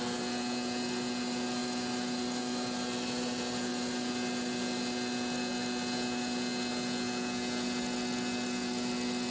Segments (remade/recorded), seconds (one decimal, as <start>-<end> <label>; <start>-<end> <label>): 0.0-9.3 recorded